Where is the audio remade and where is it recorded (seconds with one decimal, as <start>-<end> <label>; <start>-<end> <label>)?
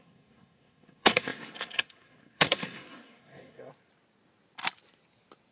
0.0-3.7 remade; 3.7-5.5 recorded